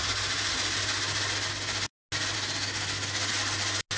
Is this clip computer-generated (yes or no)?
no